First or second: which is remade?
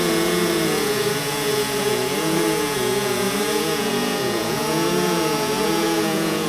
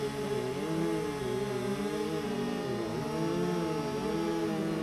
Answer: first